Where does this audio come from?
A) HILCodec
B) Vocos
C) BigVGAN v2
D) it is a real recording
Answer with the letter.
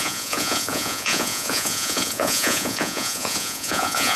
B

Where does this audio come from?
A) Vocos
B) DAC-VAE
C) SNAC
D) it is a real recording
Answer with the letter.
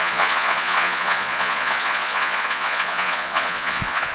A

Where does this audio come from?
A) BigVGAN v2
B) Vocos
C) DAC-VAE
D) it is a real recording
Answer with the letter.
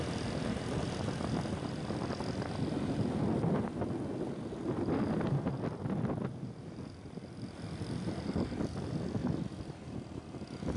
D